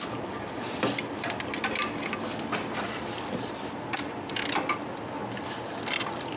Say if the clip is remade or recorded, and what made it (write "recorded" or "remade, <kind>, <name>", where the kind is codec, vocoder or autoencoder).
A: recorded